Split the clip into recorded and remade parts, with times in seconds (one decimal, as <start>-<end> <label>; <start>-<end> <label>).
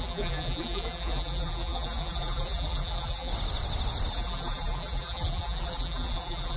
0.0-3.3 remade; 3.3-4.1 recorded; 4.1-6.6 remade